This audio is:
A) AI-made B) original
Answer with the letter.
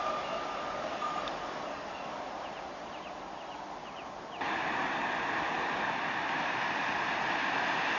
B